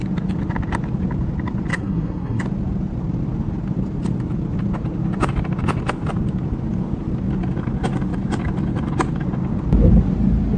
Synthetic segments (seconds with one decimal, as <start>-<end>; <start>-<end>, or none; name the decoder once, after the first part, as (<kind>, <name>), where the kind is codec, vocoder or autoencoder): 1.7-2.4 (codec, SNAC)